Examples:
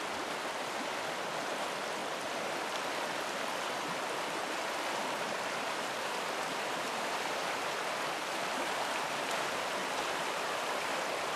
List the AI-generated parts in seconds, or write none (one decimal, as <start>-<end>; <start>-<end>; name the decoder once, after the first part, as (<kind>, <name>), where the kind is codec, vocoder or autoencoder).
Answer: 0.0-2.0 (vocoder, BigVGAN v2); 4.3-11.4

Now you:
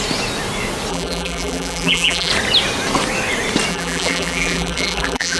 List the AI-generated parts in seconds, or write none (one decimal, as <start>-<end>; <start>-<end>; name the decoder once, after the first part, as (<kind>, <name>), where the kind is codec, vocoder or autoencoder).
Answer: 0.9-2.3 (vocoder, BigVGAN v2); 3.7-5.4

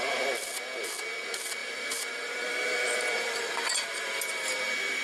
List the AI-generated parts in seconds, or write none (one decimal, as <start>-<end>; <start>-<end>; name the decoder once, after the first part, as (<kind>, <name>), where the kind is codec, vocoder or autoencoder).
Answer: 1.6-4.6 (vocoder, BigVGAN v2)